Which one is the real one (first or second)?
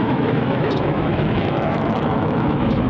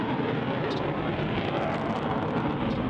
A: second